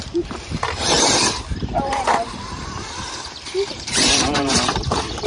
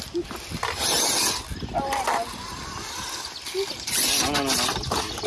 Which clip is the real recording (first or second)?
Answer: second